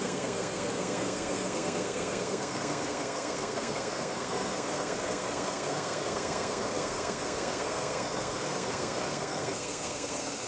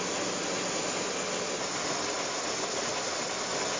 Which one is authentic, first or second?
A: second